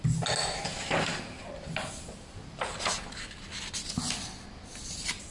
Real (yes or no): yes